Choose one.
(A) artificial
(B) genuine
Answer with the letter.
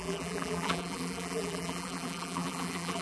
A